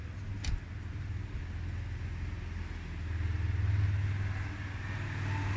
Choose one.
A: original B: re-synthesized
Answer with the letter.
A